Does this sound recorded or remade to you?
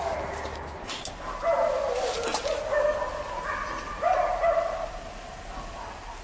recorded